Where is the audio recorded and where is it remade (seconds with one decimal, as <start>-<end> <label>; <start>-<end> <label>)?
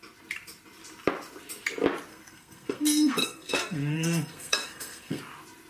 0.0-2.1 recorded; 2.1-5.2 remade; 5.2-5.7 recorded